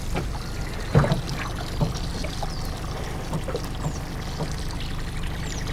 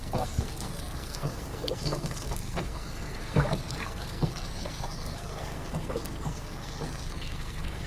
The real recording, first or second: first